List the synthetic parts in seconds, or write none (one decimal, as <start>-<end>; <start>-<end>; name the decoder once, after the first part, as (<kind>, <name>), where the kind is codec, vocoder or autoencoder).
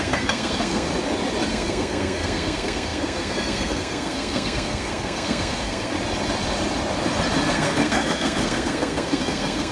0.0-0.9 (codec, SNAC); 1.5-5.9; 7.5-9.7